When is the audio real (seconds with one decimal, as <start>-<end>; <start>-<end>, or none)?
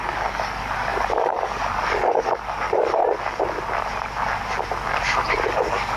3.0-5.2